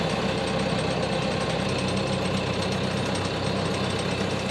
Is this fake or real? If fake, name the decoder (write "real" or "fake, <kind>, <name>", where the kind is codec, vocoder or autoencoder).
real